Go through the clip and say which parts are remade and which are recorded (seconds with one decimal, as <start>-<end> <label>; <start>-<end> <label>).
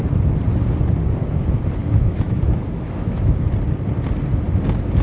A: 0.0-1.8 recorded; 1.8-3.4 remade; 3.4-5.0 recorded